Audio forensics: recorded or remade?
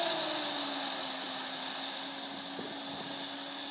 recorded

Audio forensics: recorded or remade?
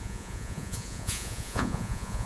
remade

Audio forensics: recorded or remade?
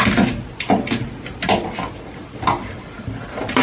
recorded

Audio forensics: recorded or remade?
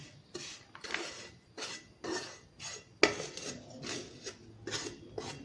recorded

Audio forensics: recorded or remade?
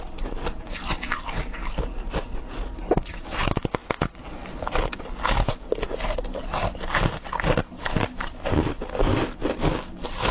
recorded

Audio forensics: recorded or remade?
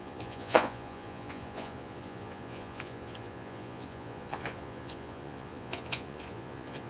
remade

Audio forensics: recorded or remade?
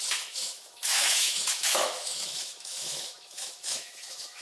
remade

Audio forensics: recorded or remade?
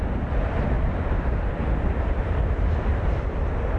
remade